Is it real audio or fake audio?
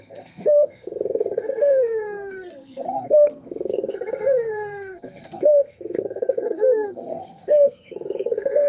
fake